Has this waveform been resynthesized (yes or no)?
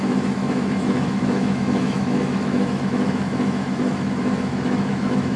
yes